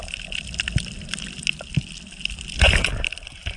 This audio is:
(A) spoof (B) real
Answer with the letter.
B